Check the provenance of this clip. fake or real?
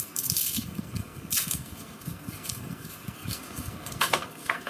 fake